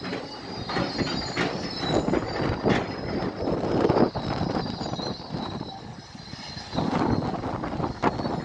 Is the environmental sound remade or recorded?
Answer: recorded